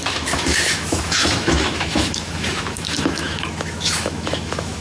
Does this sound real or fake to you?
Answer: fake